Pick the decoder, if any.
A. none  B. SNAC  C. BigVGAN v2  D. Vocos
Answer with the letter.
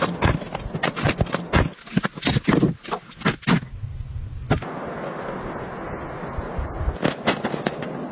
A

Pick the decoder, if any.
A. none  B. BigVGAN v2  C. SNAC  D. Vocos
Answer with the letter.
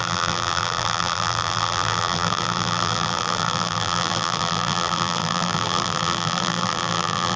B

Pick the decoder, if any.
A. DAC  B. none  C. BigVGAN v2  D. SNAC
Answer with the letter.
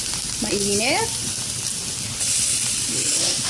C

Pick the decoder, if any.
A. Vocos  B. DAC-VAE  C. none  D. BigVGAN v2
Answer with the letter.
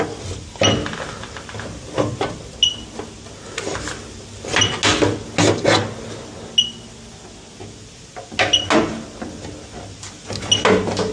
C